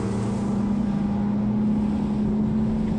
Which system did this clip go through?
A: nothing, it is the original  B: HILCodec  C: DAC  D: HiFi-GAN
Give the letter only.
A